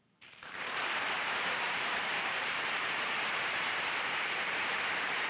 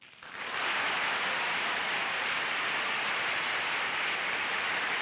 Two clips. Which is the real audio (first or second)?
second